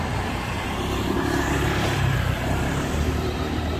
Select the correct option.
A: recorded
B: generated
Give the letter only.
B